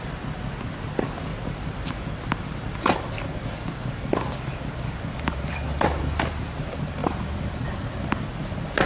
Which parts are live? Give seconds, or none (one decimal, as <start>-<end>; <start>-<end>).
none